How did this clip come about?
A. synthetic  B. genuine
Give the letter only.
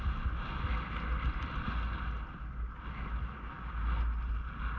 B